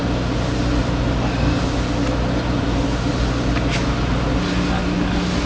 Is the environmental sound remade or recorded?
recorded